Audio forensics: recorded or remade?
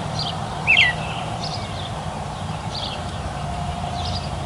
remade